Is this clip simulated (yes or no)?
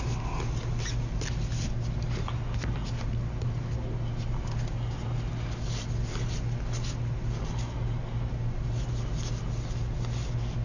no